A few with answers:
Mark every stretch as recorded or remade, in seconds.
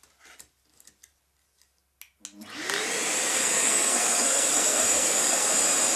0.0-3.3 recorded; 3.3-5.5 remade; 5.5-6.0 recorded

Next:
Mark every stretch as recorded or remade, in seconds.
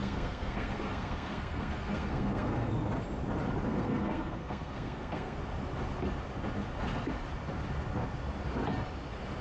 0.0-2.7 remade; 2.7-3.7 recorded; 3.7-5.4 remade; 5.4-9.4 recorded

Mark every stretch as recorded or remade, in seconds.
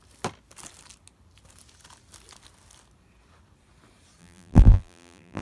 0.0-4.2 recorded; 4.2-5.4 remade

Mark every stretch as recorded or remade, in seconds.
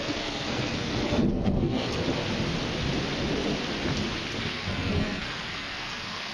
0.0-2.0 remade; 2.0-4.4 recorded; 4.4-6.3 remade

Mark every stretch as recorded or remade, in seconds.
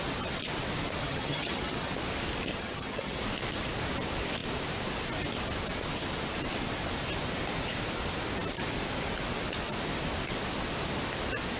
0.0-1.0 recorded; 1.0-1.9 remade; 1.9-2.5 recorded; 2.5-3.2 remade; 3.2-11.6 recorded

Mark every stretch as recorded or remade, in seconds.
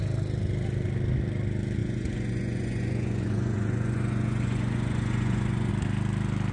0.0-1.8 recorded; 1.8-5.7 remade; 5.7-6.5 recorded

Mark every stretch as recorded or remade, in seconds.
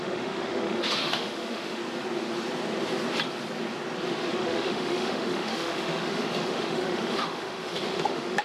0.0-1.8 remade; 1.8-4.3 recorded; 4.3-8.4 remade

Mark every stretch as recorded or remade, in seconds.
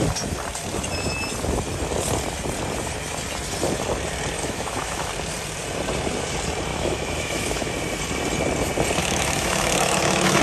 0.0-4.4 recorded; 4.4-5.1 remade; 5.1-6.7 recorded; 6.7-7.7 remade; 7.7-9.0 recorded; 9.0-10.4 remade